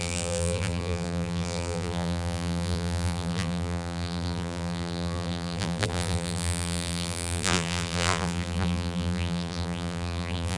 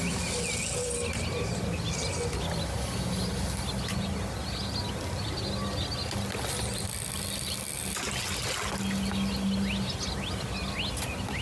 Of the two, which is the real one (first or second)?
second